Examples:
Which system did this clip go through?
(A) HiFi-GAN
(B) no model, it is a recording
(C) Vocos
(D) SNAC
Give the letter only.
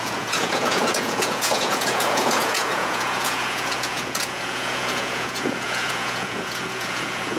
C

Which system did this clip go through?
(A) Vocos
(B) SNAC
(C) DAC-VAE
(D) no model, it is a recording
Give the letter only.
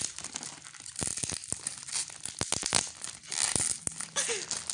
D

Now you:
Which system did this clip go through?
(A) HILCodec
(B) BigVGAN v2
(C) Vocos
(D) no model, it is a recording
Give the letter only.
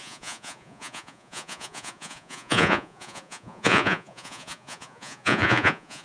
C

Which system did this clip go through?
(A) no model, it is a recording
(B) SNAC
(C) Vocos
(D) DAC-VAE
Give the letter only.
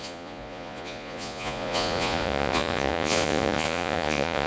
C